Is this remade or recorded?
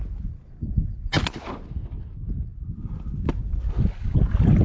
recorded